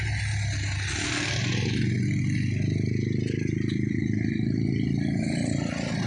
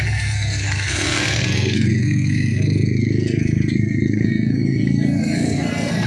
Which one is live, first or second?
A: first